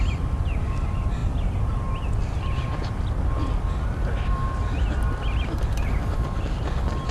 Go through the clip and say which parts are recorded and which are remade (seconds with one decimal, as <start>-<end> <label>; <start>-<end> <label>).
0.0-7.1 recorded